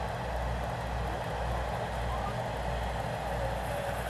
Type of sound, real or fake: real